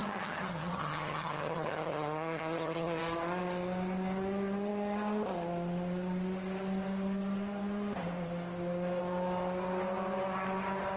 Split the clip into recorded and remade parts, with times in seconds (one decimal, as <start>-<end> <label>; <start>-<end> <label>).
0.0-3.0 remade; 3.0-11.0 recorded